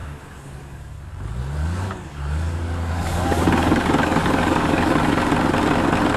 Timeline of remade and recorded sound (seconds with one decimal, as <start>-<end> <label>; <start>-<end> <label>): 0.0-1.1 remade; 1.1-1.6 recorded; 1.6-5.3 remade; 5.3-6.2 recorded